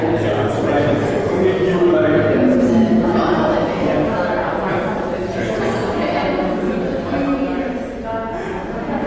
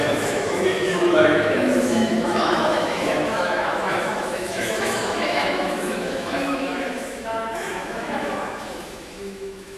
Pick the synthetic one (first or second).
second